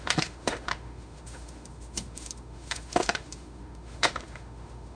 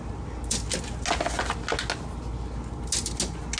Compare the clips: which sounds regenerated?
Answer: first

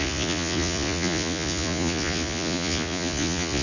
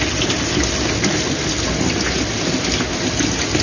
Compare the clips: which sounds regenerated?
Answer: first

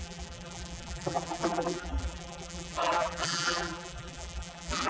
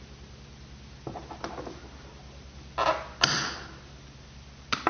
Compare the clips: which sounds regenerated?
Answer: first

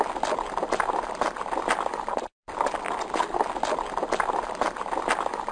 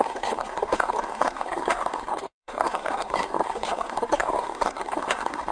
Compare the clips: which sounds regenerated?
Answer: second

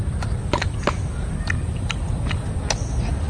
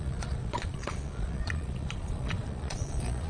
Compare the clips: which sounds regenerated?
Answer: second